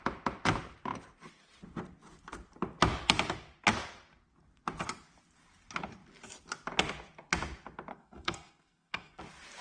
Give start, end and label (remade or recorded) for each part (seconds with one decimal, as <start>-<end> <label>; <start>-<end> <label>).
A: 0.0-7.9 recorded; 7.9-9.2 remade; 9.2-9.6 recorded